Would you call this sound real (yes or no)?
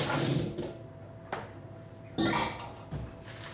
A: yes